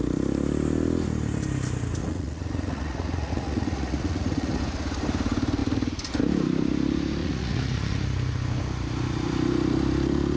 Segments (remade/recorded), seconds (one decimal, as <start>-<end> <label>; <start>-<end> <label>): 0.0-2.0 recorded; 2.0-4.6 remade; 4.6-7.2 recorded; 7.2-8.0 remade; 8.0-10.4 recorded